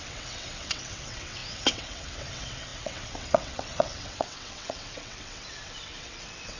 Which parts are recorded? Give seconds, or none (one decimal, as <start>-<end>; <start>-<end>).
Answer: none